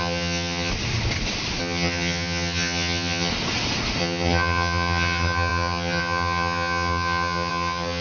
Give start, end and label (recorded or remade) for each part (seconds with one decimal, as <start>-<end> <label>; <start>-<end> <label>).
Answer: 0.0-0.7 remade; 0.7-1.6 recorded; 1.6-3.3 remade; 3.3-4.0 recorded; 4.0-8.0 remade